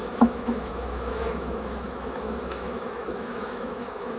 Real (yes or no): no